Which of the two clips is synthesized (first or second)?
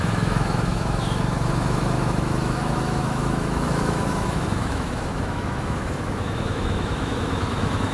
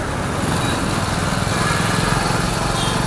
first